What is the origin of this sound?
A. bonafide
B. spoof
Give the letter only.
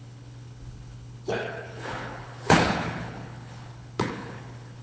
B